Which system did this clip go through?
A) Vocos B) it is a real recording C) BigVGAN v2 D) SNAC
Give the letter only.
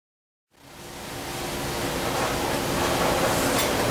B